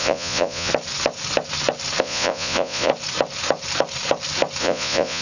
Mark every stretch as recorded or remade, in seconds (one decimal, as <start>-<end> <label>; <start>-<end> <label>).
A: 0.0-0.7 remade; 0.7-2.0 recorded; 2.0-2.9 remade; 2.9-4.6 recorded; 4.6-5.2 remade